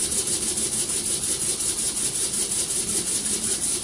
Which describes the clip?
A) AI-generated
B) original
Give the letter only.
B